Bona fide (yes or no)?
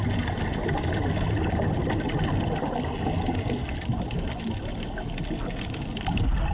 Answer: yes